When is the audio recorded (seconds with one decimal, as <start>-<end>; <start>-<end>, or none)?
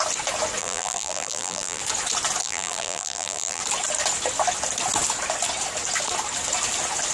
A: 0.0-0.6; 1.8-2.4; 3.6-7.1